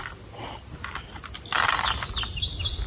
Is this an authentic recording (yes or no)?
yes